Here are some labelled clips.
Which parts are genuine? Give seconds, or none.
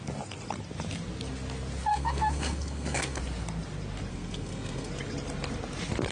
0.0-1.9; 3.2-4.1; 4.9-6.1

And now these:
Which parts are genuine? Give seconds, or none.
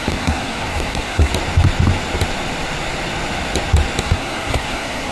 1.3-4.0